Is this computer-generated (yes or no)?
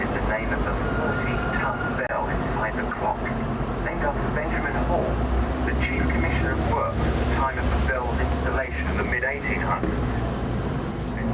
no